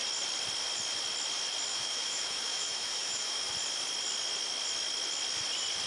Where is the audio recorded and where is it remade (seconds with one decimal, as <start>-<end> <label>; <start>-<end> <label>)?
0.0-1.7 recorded; 1.7-3.5 remade; 3.5-5.9 recorded